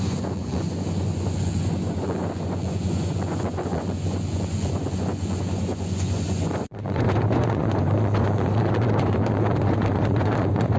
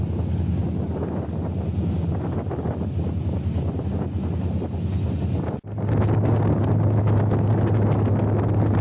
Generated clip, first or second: first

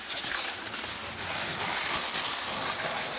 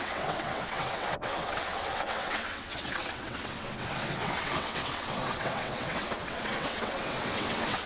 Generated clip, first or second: second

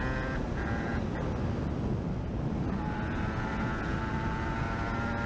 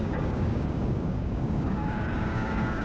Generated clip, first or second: second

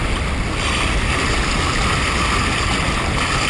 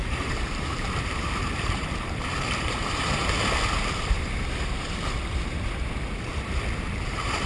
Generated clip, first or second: second